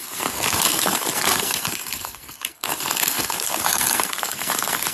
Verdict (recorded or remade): remade